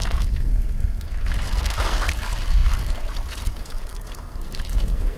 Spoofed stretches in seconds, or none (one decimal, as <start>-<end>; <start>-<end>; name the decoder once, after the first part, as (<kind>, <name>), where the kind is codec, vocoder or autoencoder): 0.0-5.2 (codec, SNAC)